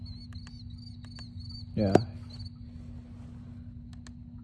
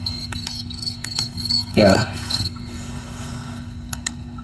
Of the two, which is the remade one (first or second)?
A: second